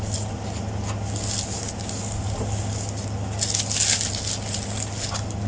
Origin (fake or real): real